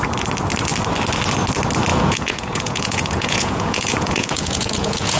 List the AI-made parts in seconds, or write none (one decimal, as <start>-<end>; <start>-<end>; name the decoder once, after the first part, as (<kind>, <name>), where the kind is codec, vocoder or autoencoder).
1.9-5.2 (vocoder, Vocos)